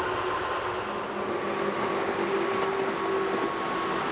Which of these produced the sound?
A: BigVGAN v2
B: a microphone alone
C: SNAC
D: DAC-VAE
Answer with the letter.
B